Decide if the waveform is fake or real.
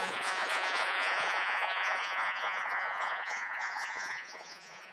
fake